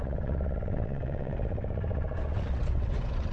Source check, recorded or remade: remade